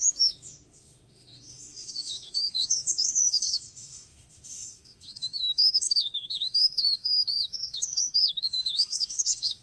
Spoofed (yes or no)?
yes